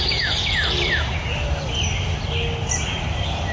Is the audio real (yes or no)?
yes